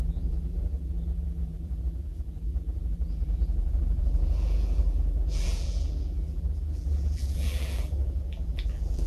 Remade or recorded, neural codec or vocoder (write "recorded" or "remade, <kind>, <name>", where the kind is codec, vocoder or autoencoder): remade, vocoder, BigVGAN v2